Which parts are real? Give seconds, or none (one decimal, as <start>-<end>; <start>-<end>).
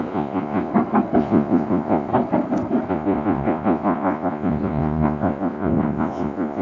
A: 0.7-1.2; 2.1-2.9